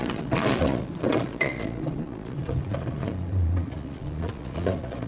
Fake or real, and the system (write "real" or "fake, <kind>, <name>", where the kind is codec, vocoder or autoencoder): fake, vocoder, Vocos